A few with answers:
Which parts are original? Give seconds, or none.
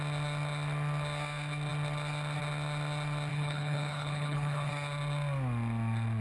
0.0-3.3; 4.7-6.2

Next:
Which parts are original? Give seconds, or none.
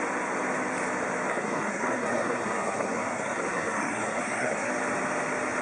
0.0-1.3; 4.7-5.6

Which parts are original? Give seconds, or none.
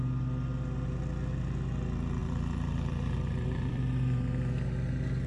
0.0-2.2; 4.5-5.3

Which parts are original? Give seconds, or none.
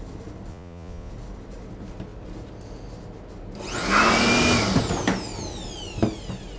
0.0-0.5; 1.1-6.6